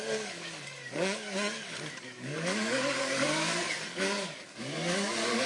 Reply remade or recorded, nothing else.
remade